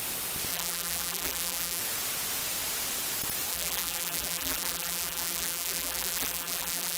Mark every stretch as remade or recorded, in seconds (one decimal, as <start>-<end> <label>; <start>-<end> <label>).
0.0-0.5 recorded; 0.5-1.8 remade; 1.8-3.5 recorded; 3.5-7.0 remade